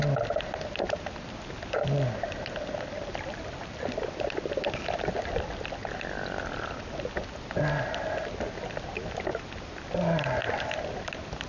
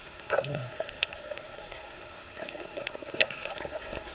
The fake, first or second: second